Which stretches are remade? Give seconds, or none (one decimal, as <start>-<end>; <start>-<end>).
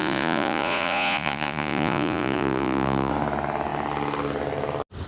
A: 0.0-3.1